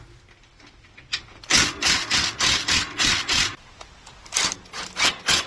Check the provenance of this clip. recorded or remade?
recorded